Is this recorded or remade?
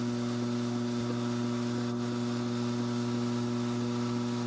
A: recorded